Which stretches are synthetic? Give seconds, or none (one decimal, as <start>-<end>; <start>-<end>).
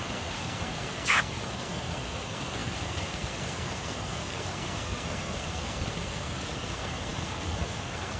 0.0-8.2